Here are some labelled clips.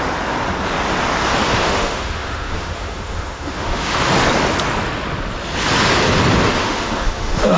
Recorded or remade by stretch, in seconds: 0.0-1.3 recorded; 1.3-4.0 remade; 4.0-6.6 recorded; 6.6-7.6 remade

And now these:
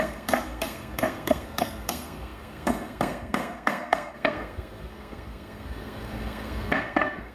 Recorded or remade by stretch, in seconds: 0.0-7.3 remade

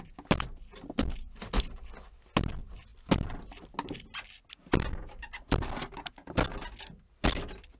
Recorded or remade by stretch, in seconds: 0.0-7.8 recorded

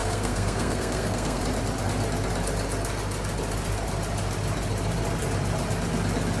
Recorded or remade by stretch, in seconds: 0.0-1.4 remade; 1.4-6.4 recorded

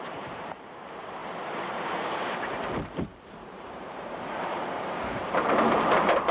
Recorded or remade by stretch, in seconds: 0.0-1.2 remade; 1.2-1.7 recorded; 1.7-6.3 remade

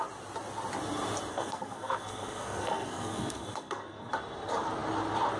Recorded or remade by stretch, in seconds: 0.0-1.3 recorded; 1.3-4.1 remade; 4.1-5.4 recorded